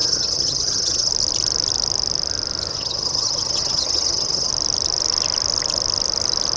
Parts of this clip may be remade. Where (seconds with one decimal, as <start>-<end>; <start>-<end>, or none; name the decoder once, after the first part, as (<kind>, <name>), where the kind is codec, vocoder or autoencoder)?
0.0-1.1 (vocoder, HiFi-GAN); 2.7-4.5